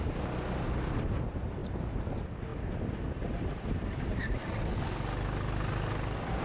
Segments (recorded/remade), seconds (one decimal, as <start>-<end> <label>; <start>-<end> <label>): 0.0-6.4 recorded